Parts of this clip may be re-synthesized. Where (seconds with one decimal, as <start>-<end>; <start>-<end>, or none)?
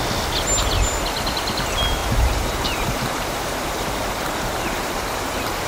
2.0-5.7